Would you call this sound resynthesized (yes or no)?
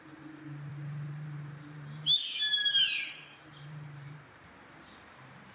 yes